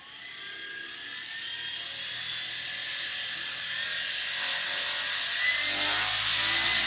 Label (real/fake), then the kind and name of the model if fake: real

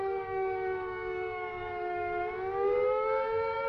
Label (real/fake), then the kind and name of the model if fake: fake, codec, DAC